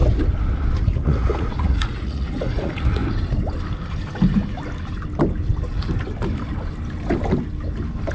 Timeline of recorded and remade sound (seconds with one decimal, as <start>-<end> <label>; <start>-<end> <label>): 0.0-0.8 recorded; 0.8-3.0 remade; 3.0-8.1 recorded